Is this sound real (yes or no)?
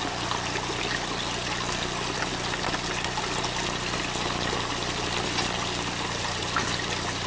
yes